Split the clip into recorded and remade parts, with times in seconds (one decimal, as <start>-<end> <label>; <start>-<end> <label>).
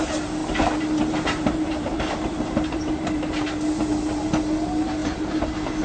0.0-5.8 remade